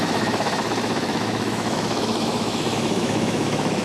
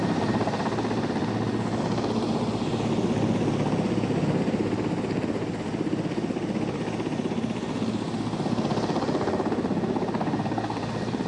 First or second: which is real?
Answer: second